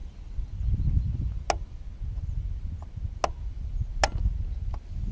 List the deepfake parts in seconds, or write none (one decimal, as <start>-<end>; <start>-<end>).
none